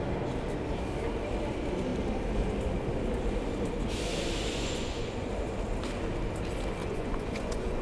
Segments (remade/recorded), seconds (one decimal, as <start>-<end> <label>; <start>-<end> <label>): 0.0-4.5 recorded; 4.5-5.3 remade; 5.3-6.8 recorded; 6.8-7.8 remade